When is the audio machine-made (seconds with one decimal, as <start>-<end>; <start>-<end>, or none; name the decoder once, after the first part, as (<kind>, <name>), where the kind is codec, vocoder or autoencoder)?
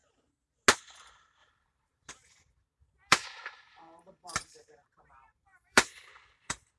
1.4-2.1 (vocoder, BigVGAN v2); 3.1-6.0